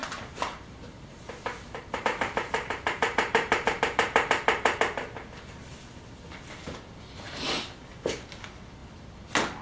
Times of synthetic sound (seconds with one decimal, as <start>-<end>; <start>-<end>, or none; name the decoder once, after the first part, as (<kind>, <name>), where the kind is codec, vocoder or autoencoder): 0.0-3.8 (vocoder, BigVGAN v2)